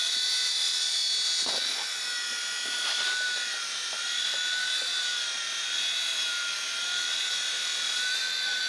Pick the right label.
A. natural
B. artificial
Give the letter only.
A